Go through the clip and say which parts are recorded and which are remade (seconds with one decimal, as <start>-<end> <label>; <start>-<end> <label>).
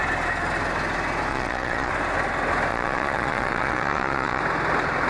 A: 0.0-1.3 recorded; 1.3-1.9 remade; 1.9-2.7 recorded; 2.7-4.4 remade; 4.4-5.1 recorded